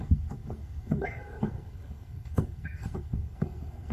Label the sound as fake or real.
fake